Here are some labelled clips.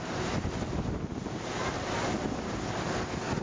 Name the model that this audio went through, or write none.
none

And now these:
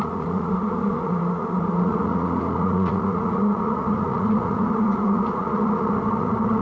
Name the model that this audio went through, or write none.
vocoder, Vocos